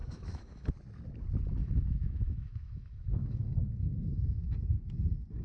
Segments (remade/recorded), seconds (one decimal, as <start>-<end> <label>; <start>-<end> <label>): 0.0-0.7 remade; 0.7-1.6 recorded; 1.6-4.4 remade; 4.4-5.4 recorded